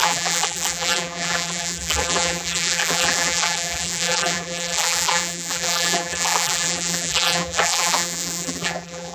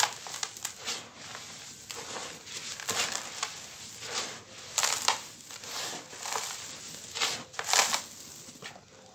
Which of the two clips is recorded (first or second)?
second